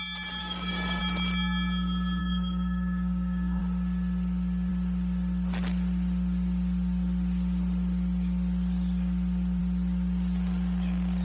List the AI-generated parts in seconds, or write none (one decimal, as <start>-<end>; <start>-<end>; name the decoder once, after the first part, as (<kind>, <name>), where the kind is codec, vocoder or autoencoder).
0.4-1.0 (codec, DAC); 2.2-3.6